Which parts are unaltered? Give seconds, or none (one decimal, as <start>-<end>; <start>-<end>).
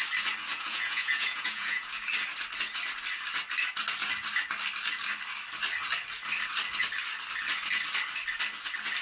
0.0-0.5; 1.9-9.0